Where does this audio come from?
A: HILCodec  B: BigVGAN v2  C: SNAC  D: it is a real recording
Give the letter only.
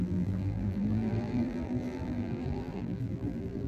B